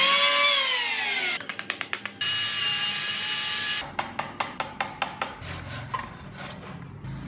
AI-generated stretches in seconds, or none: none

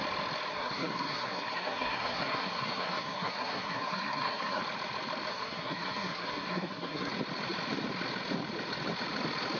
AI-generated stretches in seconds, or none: 0.5-4.6 (codec, SNAC); 5.3-7.1

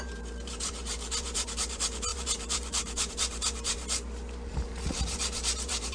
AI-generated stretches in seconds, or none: 0.0-3.8 (vocoder, BigVGAN v2); 4.5-5.9

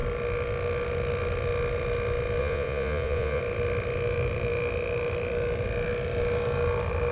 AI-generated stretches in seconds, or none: 2.4-3.4 (vocoder, Vocos)

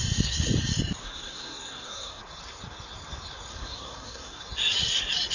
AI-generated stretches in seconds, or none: 1.0-2.2 (codec, SNAC); 3.5-4.4

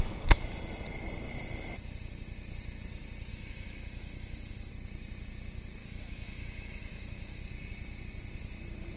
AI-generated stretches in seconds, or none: 3.3-4.7 (autoencoder, DAC-VAE); 5.8-7.4

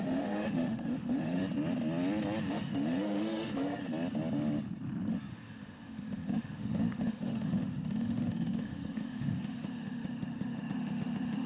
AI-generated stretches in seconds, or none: 0.0-1.4 (autoencoder, DAC-VAE); 2.5-3.8; 5.3-11.5

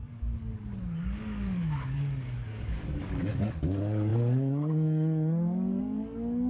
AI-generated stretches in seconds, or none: 0.0-6.5 (codec, DAC)